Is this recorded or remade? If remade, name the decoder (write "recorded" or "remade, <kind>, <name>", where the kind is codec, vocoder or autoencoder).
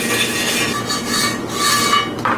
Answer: recorded